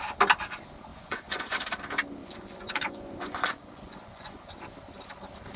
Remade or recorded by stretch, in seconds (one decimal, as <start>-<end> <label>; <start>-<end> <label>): 0.0-0.9 recorded; 0.9-1.6 remade; 1.6-2.2 recorded; 2.2-4.5 remade; 4.5-5.6 recorded